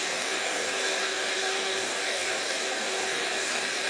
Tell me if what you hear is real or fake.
fake